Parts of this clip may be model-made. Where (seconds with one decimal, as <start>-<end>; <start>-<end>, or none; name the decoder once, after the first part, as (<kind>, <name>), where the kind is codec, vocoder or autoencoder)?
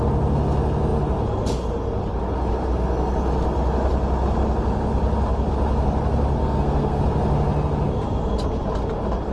6.4-7.0 (codec, SNAC)